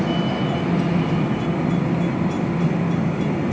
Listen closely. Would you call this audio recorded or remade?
recorded